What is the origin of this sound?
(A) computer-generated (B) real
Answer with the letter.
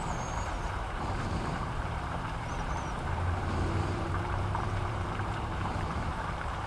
A